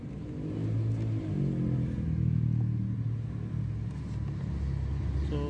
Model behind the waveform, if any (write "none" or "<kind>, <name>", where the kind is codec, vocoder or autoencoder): none